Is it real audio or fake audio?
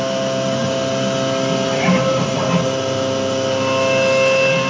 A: real